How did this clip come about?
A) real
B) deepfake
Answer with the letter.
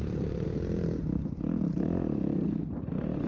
B